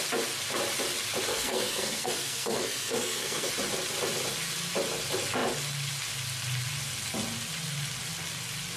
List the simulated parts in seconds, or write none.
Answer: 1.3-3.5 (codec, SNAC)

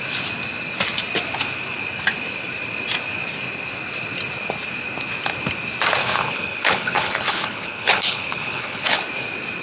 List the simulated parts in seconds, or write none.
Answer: 6.0-9.0 (codec, HILCodec)

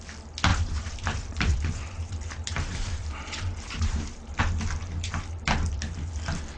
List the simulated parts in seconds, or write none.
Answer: 0.5-4.4 (vocoder, BigVGAN v2)

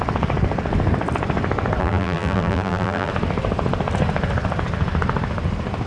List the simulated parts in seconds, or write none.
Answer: 1.8-3.1 (vocoder, BigVGAN v2)

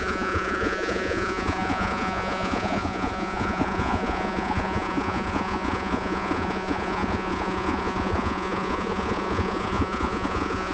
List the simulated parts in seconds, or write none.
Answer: 0.0-10.7 (vocoder, Vocos)